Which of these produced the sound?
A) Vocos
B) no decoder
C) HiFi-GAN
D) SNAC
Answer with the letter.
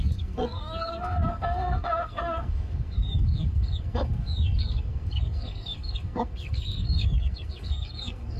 D